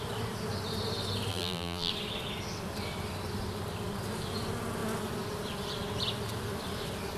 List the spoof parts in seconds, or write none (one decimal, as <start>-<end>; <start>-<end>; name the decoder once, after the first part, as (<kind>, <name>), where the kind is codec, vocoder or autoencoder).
1.3-1.9 (vocoder, BigVGAN v2)